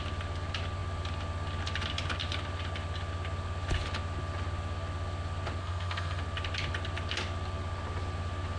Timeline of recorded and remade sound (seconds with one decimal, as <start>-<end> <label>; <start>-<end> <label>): 0.0-5.6 recorded; 5.6-6.2 remade; 6.2-8.6 recorded